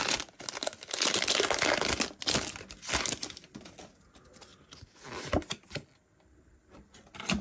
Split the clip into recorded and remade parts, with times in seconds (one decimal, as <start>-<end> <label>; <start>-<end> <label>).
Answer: 0.0-7.4 recorded